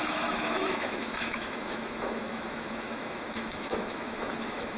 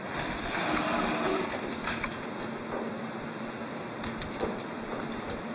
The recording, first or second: second